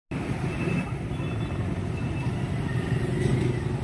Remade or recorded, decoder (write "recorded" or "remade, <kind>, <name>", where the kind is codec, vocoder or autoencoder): recorded